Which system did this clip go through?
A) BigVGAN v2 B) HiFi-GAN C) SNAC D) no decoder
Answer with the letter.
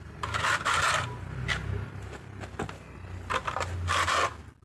D